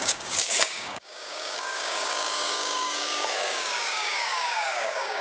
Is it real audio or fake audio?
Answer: fake